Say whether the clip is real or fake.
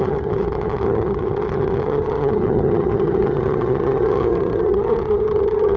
fake